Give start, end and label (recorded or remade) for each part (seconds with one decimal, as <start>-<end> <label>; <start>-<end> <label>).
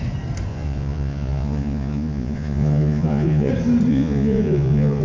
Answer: 0.0-0.5 recorded; 0.5-3.5 remade; 3.5-3.9 recorded; 3.9-5.0 remade